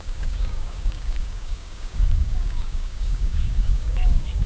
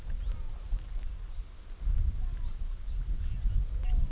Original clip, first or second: second